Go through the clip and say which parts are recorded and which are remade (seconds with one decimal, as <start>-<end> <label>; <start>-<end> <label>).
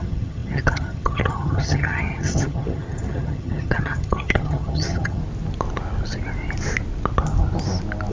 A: 0.0-5.2 remade; 5.2-8.1 recorded